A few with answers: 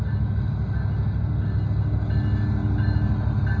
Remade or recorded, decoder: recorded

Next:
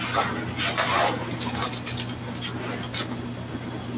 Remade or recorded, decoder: recorded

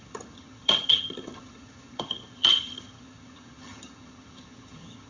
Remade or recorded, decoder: remade, vocoder, HiFi-GAN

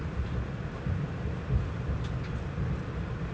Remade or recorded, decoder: recorded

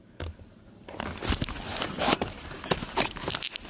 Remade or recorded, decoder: recorded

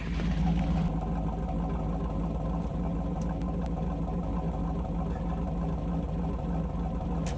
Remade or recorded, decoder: recorded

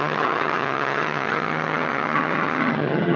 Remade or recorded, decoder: remade, vocoder, HiFi-GAN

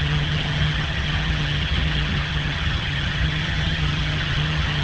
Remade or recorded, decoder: remade, vocoder, HiFi-GAN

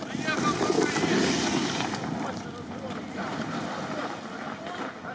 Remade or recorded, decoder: recorded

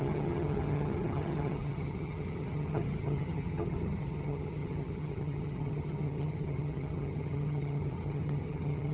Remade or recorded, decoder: remade, vocoder, HiFi-GAN